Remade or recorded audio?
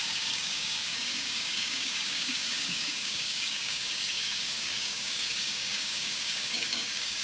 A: remade